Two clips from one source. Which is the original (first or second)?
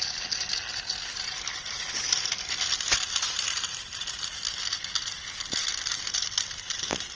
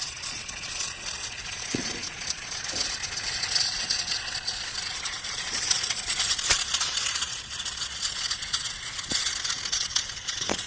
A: first